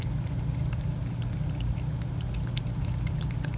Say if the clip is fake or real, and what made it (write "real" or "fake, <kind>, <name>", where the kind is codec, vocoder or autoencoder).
real